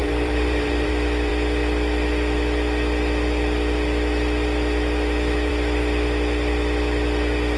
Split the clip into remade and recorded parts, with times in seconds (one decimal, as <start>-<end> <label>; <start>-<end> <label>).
0.0-0.9 remade; 0.9-7.6 recorded